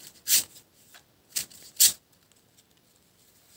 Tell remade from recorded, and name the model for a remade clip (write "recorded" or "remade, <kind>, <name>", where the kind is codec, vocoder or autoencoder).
recorded